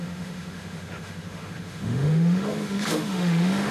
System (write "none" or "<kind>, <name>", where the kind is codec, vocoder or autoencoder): autoencoder, DAC-VAE